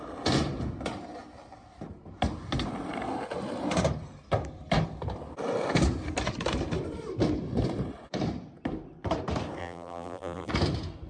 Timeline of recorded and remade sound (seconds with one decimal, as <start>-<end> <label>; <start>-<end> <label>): 0.0-9.6 recorded; 9.6-10.5 remade; 10.5-11.1 recorded